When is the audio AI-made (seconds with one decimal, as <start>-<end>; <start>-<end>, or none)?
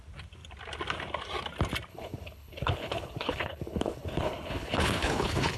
1.9-5.6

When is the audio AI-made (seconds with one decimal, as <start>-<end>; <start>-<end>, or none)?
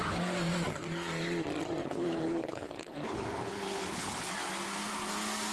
1.8-4.3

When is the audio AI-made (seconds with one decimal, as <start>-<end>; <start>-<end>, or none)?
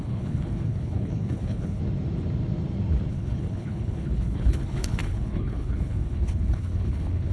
0.0-1.8; 3.1-7.3